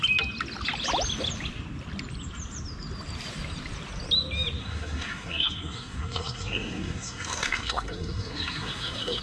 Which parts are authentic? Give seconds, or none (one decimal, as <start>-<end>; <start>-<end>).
0.0-4.6